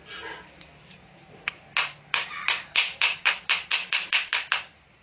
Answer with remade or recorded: recorded